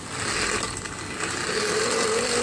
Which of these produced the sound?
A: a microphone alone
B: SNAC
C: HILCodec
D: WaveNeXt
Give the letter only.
A